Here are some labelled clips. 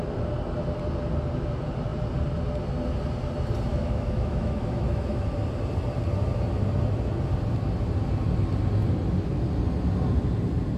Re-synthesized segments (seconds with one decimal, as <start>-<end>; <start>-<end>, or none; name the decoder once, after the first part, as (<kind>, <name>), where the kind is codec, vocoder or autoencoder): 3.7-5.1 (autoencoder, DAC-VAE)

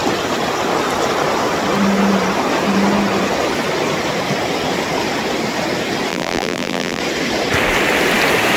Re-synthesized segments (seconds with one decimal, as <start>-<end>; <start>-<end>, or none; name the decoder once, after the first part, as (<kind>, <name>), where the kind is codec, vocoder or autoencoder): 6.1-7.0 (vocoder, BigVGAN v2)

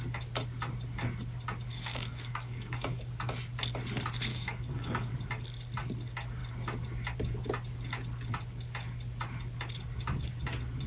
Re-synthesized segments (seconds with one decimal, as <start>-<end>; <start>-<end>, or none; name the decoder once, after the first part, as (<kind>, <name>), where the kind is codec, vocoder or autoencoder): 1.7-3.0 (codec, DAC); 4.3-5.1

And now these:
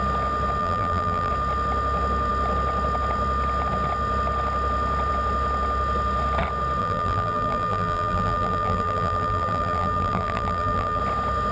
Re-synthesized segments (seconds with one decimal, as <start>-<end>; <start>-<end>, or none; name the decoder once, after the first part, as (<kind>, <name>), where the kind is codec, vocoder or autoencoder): 0.6-1.3 (vocoder, BigVGAN v2); 6.8-11.0

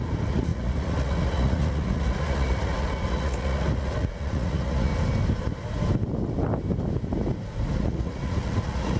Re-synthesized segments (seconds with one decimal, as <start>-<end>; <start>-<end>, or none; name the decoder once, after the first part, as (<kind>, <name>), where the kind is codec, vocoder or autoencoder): 0.0-4.9 (vocoder, Vocos); 7.8-9.0

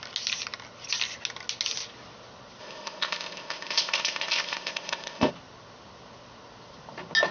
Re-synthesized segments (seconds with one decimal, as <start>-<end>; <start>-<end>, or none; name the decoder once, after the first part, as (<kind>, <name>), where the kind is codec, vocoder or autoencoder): 2.6-5.3 (codec, ZipCodec)

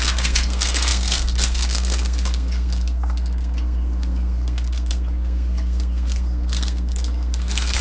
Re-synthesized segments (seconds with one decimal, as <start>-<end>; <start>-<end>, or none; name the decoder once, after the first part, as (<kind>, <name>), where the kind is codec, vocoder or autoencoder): 0.0-7.8 (codec, SNAC)

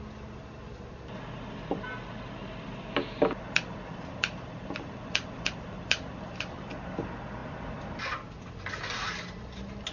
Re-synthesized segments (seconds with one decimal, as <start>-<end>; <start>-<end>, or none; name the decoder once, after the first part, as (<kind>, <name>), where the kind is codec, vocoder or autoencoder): 0.7-2.0 (vocoder, BigVGAN v2); 2.4-6.5